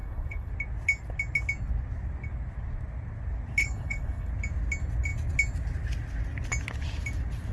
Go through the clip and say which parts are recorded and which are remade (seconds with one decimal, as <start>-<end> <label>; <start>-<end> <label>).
0.0-0.5 remade; 0.5-3.6 recorded; 3.6-4.3 remade; 4.3-7.5 recorded